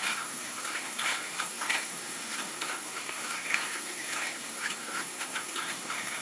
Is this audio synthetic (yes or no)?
yes